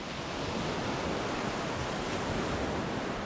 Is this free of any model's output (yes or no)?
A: yes